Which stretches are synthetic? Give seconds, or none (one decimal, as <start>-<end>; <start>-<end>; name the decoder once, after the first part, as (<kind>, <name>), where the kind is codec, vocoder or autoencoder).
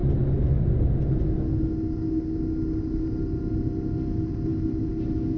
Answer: none